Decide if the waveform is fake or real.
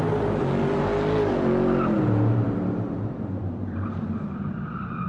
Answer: real